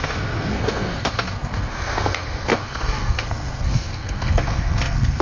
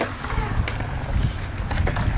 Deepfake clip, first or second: first